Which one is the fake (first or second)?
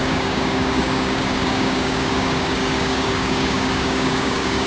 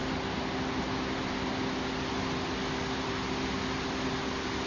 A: first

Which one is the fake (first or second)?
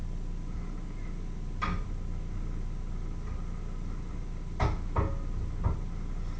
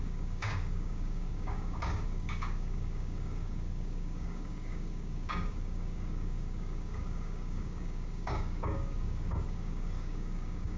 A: second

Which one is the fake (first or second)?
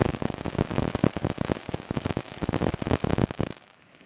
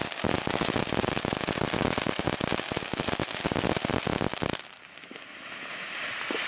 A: first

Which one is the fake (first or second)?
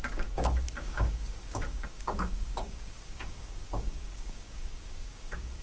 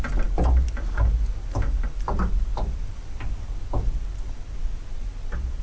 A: first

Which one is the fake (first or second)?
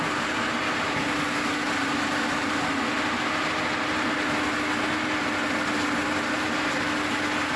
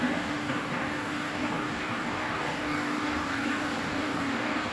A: second